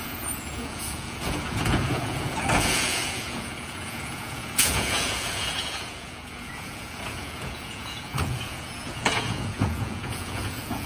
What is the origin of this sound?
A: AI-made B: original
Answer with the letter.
A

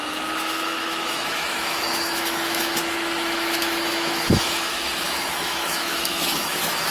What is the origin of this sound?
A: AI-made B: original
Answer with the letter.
A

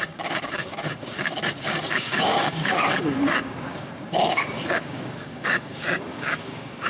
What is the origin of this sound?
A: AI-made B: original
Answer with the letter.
A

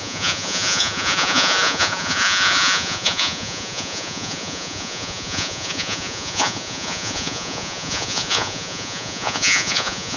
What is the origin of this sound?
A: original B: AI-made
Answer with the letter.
B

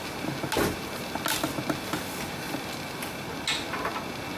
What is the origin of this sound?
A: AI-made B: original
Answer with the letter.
B